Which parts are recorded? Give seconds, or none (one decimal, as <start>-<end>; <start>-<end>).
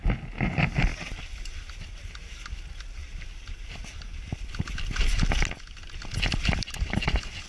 0.0-0.9; 1.5-7.5